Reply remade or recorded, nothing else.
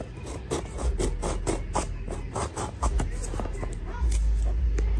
recorded